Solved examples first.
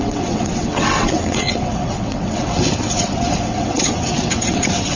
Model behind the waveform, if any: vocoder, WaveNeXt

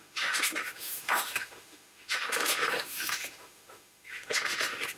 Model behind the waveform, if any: autoencoder, DAC-VAE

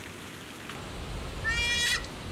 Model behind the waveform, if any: none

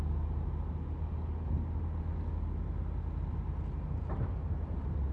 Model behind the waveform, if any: none